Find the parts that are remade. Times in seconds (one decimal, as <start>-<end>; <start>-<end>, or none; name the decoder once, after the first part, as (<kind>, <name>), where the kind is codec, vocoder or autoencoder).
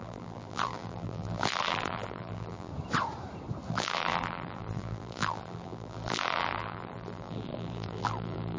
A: 0.0-2.7 (vocoder, BigVGAN v2); 3.7-8.6